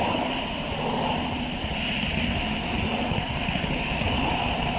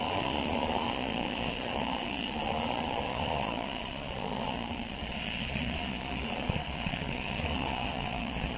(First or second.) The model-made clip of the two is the second